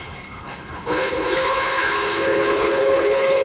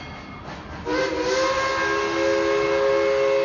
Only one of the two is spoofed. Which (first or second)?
first